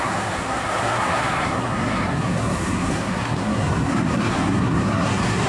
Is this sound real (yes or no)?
no